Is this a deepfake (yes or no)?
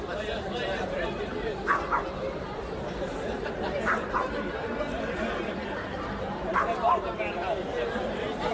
yes